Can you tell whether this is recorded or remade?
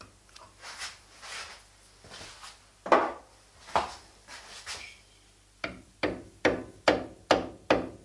recorded